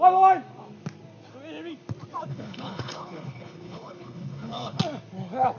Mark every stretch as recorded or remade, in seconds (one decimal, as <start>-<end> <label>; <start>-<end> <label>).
0.0-2.3 recorded; 2.3-4.8 remade; 4.8-5.6 recorded